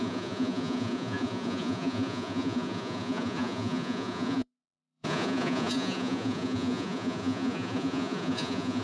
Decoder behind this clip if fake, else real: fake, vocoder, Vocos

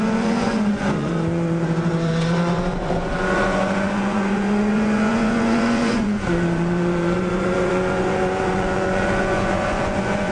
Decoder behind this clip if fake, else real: fake, vocoder, Vocos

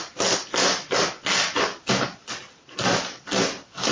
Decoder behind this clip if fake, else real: real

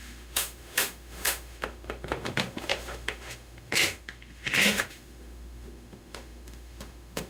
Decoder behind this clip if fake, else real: fake, autoencoder, DAC-VAE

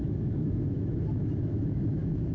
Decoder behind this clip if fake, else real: fake, autoencoder, DAC-VAE